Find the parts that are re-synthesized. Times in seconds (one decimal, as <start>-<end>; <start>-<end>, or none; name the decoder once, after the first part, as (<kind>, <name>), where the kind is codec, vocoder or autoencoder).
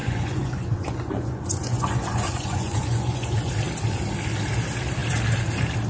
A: 0.0-3.5 (vocoder, Vocos)